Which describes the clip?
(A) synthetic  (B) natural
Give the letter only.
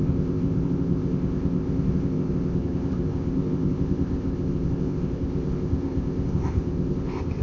A